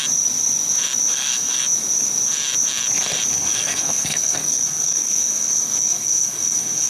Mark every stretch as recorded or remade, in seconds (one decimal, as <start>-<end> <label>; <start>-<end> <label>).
0.0-1.1 recorded; 1.1-1.6 remade; 1.6-3.3 recorded; 3.3-6.9 remade